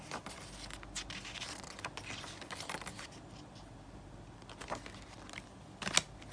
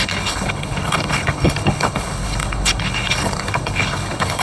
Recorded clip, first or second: first